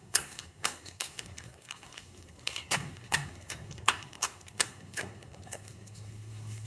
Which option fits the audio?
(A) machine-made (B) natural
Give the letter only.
A